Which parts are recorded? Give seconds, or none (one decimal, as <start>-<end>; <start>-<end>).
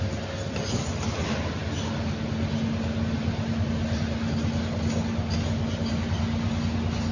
0.0-7.1